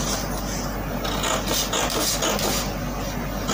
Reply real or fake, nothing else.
real